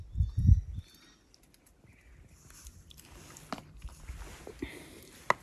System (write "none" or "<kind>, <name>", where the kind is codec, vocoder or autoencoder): none